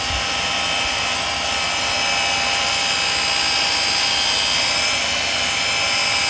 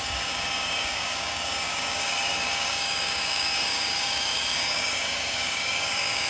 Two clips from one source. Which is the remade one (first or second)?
second